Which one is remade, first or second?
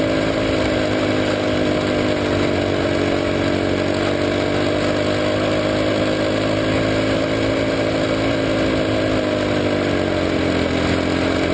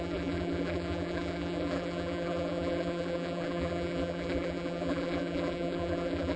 second